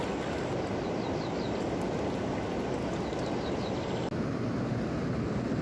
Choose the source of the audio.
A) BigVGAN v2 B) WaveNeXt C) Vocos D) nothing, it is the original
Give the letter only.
D